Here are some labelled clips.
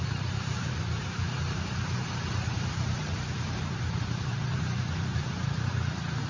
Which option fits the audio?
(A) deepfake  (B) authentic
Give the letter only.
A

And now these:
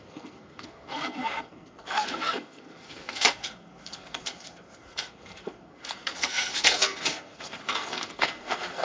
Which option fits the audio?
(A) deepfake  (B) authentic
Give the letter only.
A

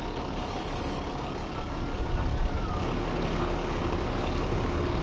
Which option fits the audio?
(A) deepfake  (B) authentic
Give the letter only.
A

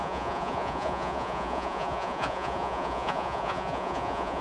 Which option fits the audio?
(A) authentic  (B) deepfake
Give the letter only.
B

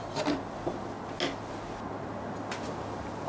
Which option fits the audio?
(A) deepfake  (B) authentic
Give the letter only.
B